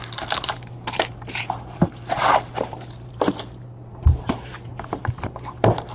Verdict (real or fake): fake